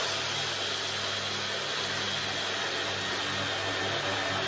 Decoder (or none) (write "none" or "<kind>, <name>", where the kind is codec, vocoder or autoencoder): none